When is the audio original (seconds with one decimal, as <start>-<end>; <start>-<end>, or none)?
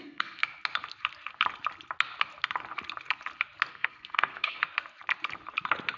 0.4-3.7; 4.6-6.0